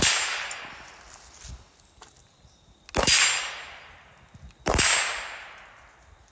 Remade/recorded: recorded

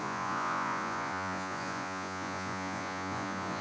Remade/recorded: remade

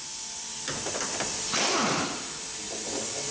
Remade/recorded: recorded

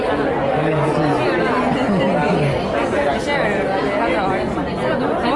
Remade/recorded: recorded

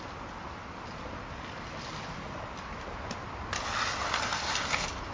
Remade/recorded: recorded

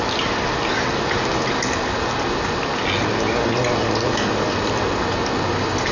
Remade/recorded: recorded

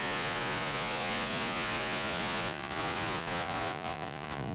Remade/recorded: remade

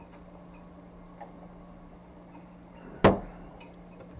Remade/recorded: recorded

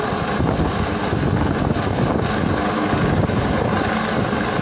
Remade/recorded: recorded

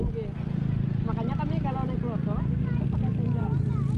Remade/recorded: recorded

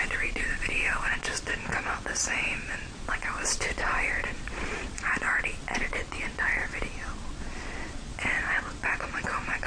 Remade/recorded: remade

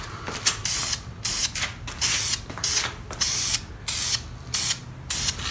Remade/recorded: recorded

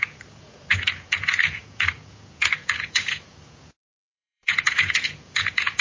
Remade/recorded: remade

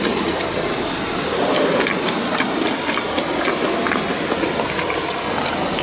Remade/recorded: recorded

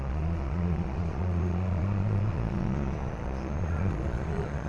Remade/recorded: remade